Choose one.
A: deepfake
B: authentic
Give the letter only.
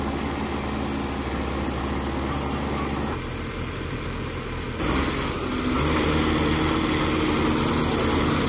B